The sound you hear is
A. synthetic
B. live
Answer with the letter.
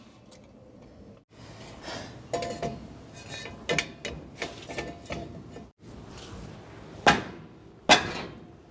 B